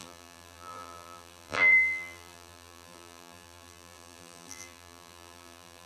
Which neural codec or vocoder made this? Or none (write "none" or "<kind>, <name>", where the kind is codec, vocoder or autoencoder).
vocoder, BigVGAN v2